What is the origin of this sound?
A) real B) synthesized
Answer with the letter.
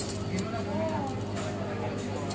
A